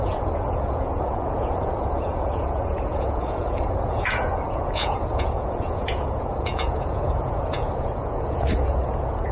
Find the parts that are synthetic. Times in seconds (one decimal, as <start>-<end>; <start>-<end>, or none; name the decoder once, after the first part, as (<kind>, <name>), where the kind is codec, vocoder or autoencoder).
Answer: 0.0-9.3 (vocoder, Vocos)